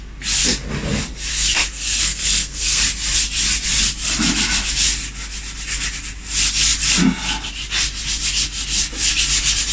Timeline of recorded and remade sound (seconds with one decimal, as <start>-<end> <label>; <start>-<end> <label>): 0.0-1.3 recorded; 1.3-2.8 remade; 2.8-9.7 recorded